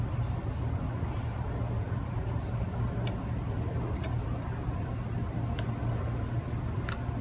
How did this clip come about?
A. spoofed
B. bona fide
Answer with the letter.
B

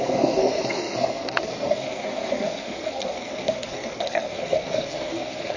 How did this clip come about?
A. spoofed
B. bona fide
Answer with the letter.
A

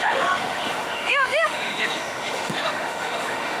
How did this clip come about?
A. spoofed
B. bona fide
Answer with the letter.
A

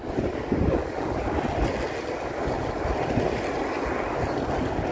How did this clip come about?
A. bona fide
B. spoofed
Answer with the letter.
A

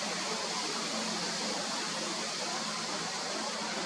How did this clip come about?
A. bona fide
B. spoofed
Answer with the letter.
A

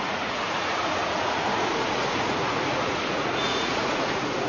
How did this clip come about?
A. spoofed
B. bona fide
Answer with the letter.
A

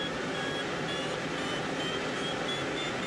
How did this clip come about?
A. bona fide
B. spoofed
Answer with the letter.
A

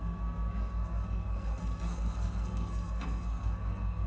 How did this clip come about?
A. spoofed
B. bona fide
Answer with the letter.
A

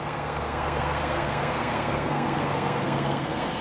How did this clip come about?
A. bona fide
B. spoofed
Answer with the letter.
B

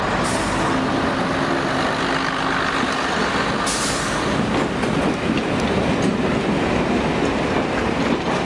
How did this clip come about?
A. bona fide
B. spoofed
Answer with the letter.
A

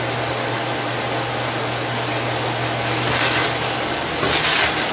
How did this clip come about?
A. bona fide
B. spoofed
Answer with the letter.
A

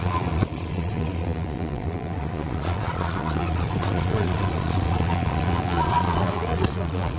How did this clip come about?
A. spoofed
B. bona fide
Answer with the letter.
A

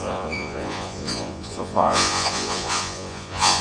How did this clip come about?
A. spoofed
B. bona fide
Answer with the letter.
A